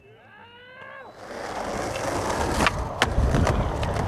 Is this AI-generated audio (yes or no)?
no